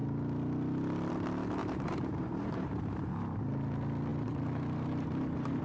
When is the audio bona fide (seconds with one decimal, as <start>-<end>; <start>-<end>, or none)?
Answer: 0.0-1.6; 3.4-4.1